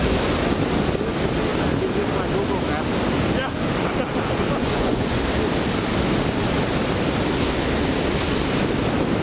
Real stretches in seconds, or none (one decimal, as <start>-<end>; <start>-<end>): 0.0-4.6; 5.2-9.2